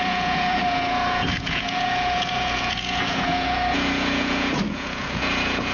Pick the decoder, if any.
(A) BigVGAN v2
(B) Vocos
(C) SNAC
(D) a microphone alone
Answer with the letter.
B